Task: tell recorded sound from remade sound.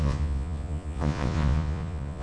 remade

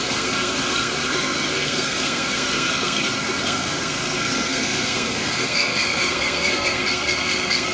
remade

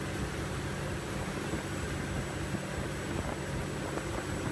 recorded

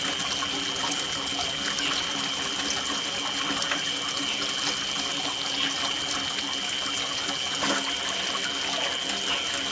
recorded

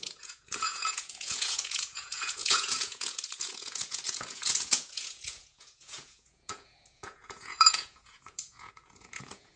remade